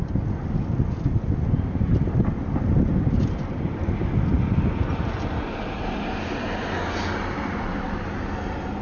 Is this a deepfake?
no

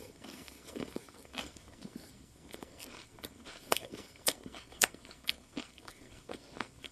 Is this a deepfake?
yes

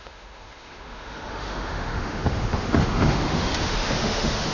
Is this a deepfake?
yes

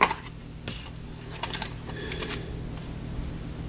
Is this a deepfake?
no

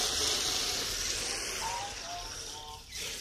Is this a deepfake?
no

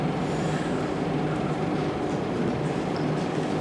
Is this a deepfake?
no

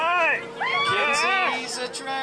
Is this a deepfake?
no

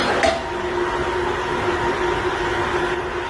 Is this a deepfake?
no